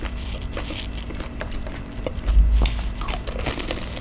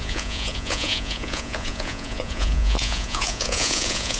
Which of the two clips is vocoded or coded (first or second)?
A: second